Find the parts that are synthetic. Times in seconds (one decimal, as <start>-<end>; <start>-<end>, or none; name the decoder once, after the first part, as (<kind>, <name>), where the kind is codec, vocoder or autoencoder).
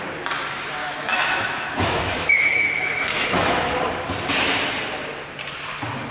0.8-3.7 (autoencoder, DAC-VAE)